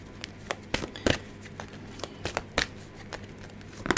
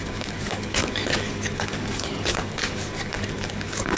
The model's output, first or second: second